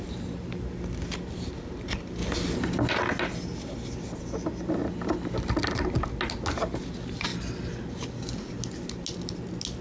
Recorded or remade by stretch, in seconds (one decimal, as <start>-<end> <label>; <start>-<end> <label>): 0.0-9.8 recorded